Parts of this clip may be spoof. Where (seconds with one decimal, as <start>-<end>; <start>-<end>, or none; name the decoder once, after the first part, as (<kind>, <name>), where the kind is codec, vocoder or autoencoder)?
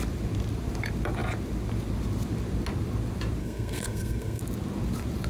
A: 3.4-4.4 (codec, SNAC)